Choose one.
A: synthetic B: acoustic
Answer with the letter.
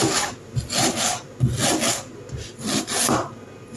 B